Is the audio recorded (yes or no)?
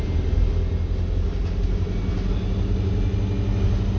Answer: yes